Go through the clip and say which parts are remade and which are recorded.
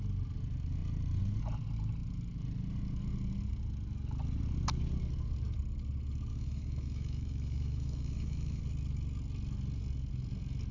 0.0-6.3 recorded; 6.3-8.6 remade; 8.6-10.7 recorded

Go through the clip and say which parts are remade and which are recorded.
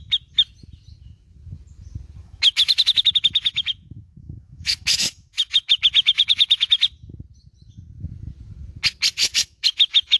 0.0-2.2 recorded; 2.2-6.7 remade; 6.7-9.2 recorded; 9.2-10.2 remade